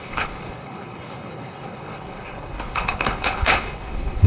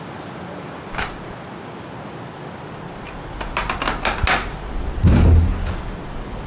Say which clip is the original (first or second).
second